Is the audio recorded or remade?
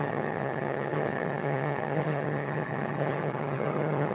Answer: remade